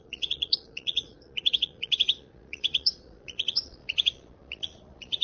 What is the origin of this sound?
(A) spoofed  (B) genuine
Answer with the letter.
A